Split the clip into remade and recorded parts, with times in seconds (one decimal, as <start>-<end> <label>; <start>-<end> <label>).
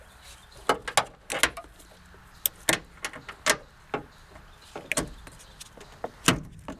0.0-6.8 recorded